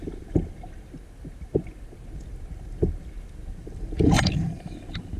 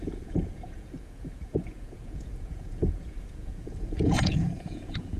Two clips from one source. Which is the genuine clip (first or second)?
first